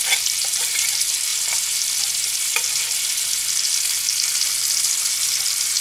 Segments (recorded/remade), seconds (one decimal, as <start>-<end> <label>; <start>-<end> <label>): 0.0-1.3 recorded; 1.3-2.4 remade; 2.4-5.8 recorded